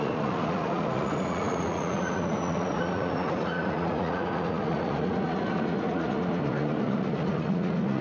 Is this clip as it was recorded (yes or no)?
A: no